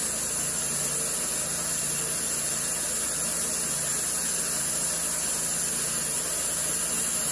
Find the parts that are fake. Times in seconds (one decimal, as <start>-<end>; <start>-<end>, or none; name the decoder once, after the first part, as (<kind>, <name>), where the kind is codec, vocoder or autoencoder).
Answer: none